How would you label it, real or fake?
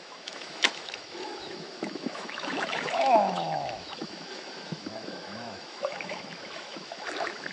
fake